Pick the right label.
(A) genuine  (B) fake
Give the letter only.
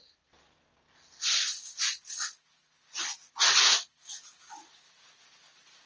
A